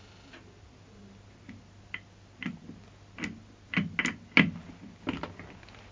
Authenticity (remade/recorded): recorded